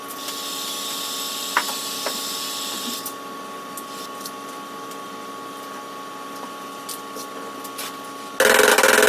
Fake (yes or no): no